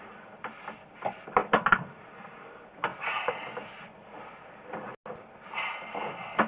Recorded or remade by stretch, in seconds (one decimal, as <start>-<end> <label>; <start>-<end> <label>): 0.0-6.5 recorded

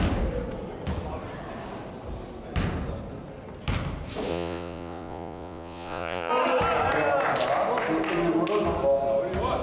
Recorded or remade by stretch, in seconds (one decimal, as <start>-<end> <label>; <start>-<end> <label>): 0.0-4.3 recorded; 4.3-6.3 remade; 6.3-9.6 recorded